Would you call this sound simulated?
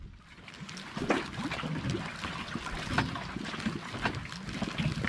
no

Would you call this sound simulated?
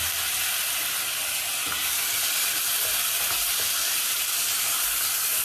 no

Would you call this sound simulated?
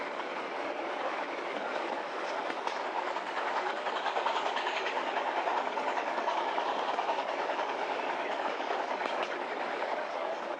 yes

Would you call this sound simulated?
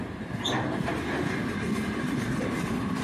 yes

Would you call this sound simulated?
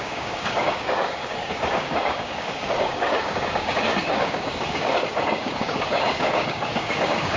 yes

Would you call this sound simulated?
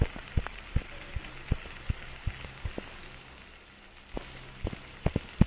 no